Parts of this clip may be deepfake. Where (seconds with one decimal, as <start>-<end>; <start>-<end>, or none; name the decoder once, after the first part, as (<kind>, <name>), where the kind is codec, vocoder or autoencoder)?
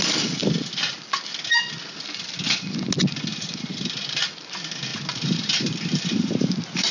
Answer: 3.3-4.2 (vocoder, BigVGAN v2); 4.9-6.9